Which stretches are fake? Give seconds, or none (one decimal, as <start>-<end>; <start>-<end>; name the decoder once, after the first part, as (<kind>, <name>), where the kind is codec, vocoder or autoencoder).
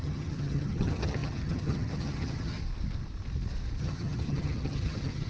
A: 0.0-2.6 (vocoder, HiFi-GAN); 3.8-5.3